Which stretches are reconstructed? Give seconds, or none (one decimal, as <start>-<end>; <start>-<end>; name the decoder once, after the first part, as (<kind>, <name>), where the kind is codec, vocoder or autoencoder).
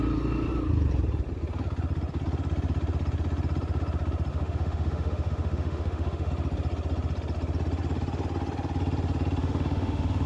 4.3-6.3 (autoencoder, DAC-VAE); 9.4-10.3